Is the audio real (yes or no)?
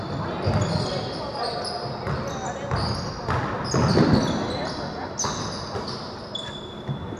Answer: yes